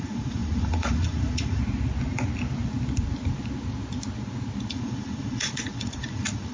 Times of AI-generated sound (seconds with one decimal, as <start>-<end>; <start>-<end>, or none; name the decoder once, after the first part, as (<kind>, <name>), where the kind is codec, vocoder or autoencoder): 0.0-1.6 (vocoder, Vocos); 4.7-6.5